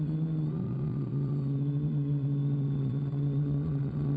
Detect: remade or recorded remade